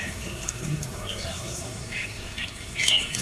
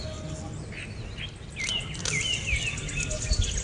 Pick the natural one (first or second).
second